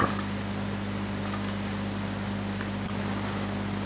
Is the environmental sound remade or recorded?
recorded